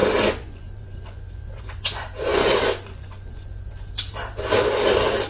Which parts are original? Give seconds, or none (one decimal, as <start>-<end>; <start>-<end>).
4.1-5.3

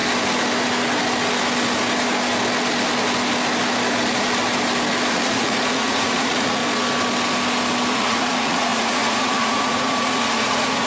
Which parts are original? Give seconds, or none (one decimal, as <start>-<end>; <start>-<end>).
0.0-5.1; 6.6-7.9